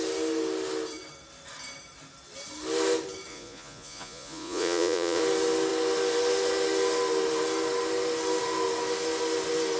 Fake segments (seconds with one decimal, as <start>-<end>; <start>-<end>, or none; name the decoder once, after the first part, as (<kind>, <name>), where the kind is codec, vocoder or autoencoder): 3.3-5.2 (vocoder, Vocos)